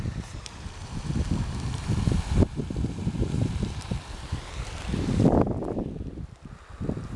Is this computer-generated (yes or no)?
no